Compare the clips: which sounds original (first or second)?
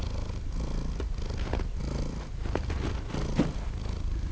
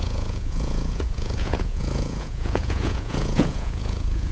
first